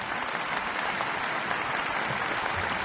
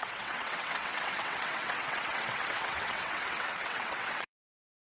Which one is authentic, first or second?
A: first